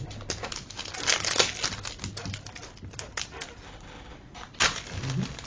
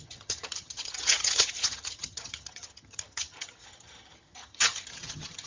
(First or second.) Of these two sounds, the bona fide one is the first